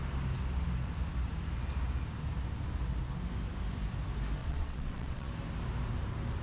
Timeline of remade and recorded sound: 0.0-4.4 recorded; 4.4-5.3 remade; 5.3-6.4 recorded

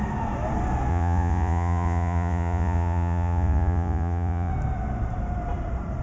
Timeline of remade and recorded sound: 0.0-0.9 recorded; 0.9-4.5 remade; 4.5-6.0 recorded

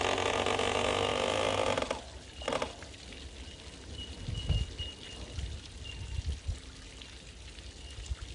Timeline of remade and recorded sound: 0.0-8.3 recorded

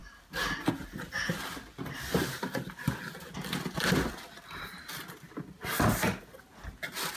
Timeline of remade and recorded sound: 0.0-7.2 recorded

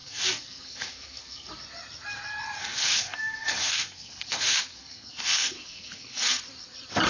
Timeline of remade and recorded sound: 0.0-1.5 remade; 1.5-2.6 recorded; 2.6-6.4 remade; 6.4-7.1 recorded

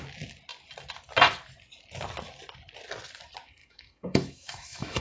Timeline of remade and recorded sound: 0.0-3.6 recorded; 3.6-5.0 remade